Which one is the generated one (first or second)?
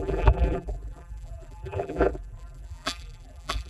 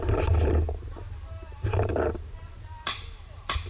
first